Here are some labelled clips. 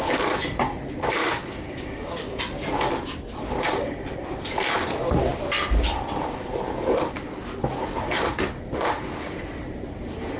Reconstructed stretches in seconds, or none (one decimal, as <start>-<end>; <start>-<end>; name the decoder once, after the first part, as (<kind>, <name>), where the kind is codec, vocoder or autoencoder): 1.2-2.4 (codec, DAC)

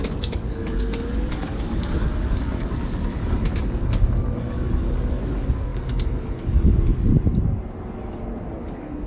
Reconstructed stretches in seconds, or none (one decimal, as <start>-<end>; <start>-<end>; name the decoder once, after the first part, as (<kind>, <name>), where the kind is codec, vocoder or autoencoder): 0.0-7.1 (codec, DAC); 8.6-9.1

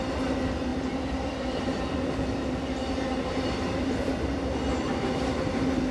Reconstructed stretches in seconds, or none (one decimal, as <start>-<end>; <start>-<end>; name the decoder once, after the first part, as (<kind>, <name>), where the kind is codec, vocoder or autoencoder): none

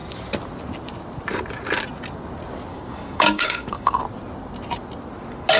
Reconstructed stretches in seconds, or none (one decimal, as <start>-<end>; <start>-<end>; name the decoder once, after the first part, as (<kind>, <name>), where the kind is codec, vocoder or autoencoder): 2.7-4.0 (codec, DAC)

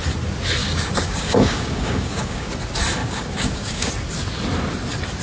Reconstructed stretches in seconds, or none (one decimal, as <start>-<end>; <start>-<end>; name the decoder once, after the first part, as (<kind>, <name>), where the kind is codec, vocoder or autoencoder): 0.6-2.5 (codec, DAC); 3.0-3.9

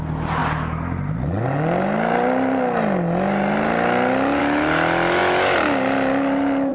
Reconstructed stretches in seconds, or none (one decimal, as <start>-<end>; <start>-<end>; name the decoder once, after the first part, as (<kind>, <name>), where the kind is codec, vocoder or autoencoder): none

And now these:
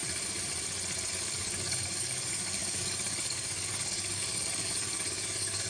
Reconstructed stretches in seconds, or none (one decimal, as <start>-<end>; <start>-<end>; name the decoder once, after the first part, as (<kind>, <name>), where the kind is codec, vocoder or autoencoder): 1.1-5.7 (codec, DAC)